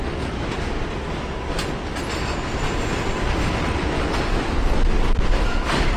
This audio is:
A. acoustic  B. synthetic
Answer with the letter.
A